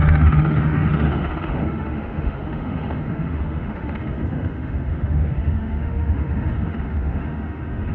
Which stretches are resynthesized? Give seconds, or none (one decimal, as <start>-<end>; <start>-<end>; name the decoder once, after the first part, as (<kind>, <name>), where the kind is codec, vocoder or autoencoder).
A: 0.0-7.9 (autoencoder, DAC-VAE)